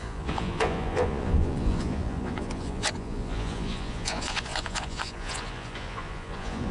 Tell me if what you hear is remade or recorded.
remade